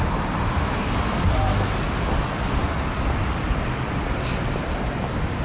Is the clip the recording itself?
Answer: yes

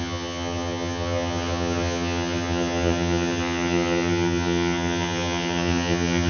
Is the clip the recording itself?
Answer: no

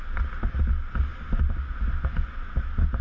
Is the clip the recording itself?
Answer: yes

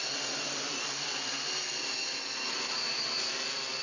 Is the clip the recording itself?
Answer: no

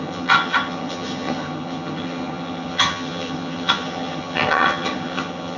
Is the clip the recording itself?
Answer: no